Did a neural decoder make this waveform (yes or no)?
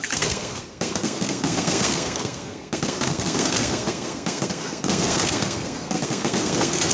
yes